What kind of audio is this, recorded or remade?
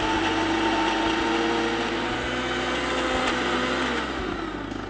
recorded